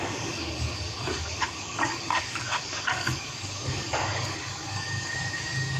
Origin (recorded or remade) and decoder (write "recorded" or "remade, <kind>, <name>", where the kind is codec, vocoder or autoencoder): remade, codec, DAC